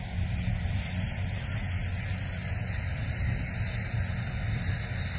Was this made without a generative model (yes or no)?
yes